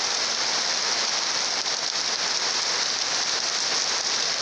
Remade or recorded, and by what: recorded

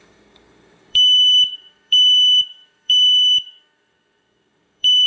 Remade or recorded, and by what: remade, codec, DAC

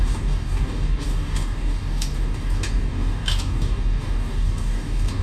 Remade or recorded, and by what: remade, codec, DAC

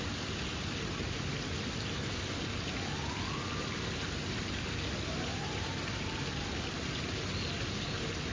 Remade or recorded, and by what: recorded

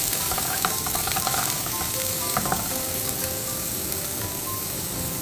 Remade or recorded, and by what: remade, codec, DAC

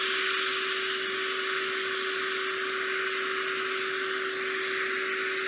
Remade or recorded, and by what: recorded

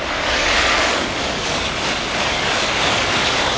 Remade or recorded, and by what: remade, codec, DAC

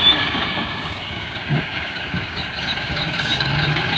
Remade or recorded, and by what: remade, codec, DAC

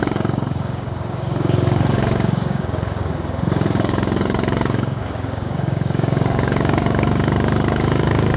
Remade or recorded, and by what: remade, codec, DAC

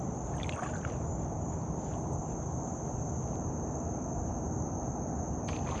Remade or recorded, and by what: recorded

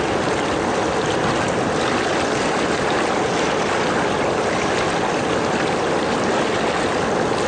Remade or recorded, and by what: recorded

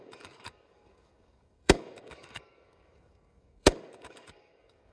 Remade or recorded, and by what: remade, codec, DAC